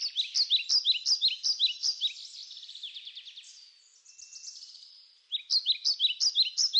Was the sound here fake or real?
real